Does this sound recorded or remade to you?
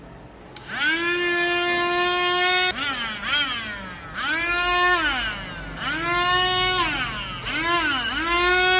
recorded